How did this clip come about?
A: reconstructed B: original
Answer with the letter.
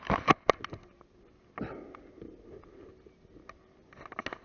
B